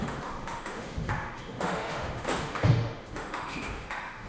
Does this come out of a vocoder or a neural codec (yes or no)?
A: yes